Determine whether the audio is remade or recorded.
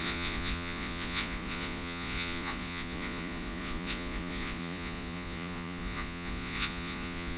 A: remade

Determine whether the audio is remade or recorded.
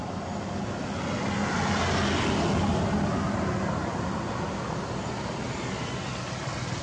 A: recorded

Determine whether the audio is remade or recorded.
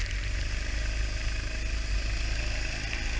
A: recorded